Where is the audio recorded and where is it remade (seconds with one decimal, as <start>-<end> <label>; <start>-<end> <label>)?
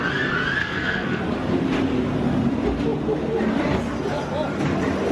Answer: 0.0-0.6 recorded; 0.6-1.2 remade; 1.2-5.1 recorded